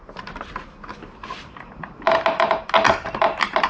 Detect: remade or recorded recorded